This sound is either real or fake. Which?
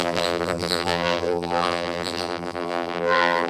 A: fake